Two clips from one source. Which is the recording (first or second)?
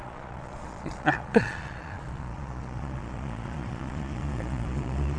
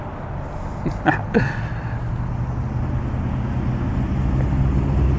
second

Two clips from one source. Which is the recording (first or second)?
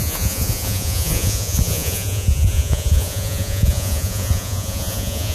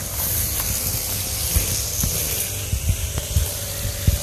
second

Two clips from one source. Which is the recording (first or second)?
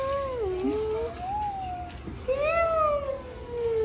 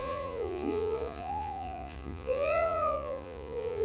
first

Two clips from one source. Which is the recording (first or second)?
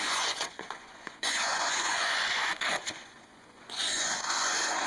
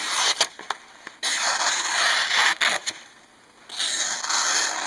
second